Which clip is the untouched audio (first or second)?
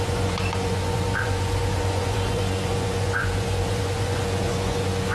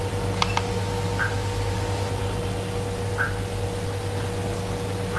second